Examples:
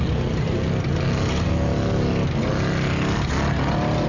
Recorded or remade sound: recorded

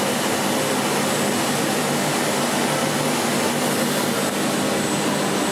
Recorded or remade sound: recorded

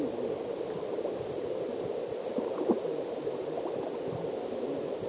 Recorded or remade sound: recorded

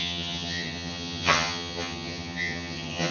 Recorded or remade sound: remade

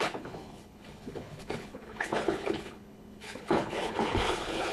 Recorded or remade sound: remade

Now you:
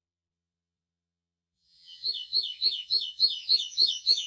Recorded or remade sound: remade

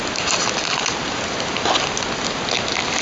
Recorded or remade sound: recorded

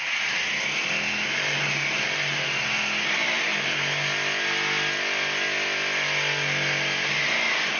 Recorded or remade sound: recorded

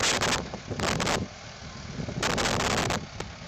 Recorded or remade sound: recorded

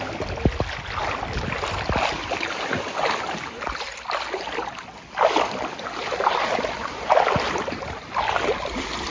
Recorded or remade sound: recorded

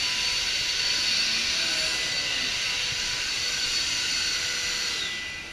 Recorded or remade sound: recorded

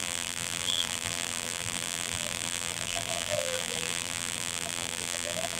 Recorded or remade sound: remade